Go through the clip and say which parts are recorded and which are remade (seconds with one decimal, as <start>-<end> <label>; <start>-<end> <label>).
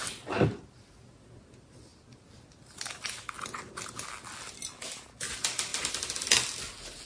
0.0-7.1 recorded